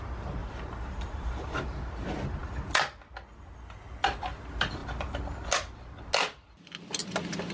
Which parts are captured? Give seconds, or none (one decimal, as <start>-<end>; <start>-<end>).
0.0-0.4; 2.0-7.5